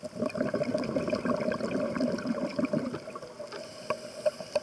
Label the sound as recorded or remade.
remade